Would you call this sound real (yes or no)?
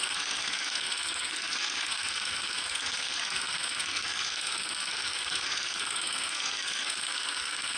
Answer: no